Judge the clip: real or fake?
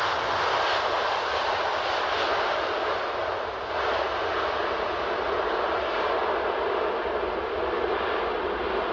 real